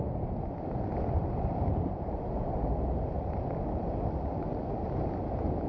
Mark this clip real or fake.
real